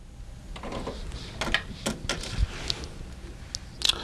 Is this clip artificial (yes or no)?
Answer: no